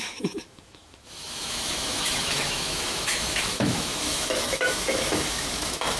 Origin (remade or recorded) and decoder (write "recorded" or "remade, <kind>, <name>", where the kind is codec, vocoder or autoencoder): remade, autoencoder, DAC-VAE